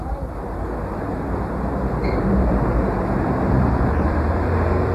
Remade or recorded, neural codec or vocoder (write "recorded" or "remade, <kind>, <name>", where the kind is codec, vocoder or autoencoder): remade, vocoder, BigVGAN v2